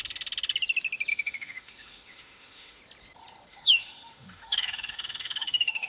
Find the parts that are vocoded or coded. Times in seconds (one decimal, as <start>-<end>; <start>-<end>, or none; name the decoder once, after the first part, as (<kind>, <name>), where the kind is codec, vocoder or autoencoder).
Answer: 1.1-2.8 (autoencoder, DAC-VAE); 3.5-5.9